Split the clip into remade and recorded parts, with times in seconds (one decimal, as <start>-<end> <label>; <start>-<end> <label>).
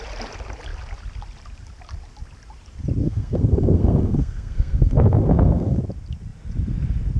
0.0-3.0 recorded; 3.0-5.8 remade; 5.8-7.2 recorded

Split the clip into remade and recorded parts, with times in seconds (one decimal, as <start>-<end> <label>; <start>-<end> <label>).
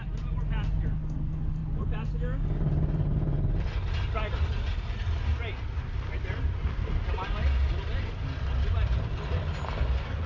0.0-10.3 recorded